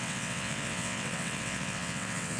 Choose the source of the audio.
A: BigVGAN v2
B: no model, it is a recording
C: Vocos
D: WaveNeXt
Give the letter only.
D